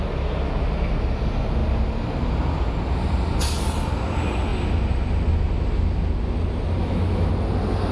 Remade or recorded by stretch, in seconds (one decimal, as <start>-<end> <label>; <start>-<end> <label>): 0.0-6.8 recorded; 6.8-7.3 remade; 7.3-7.9 recorded